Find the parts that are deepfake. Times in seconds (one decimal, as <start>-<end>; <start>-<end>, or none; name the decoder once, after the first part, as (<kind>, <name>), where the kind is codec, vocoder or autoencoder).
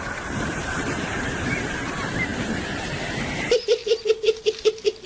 0.0-3.8 (vocoder, BigVGAN v2)